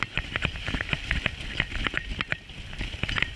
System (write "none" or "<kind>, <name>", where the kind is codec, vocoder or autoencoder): none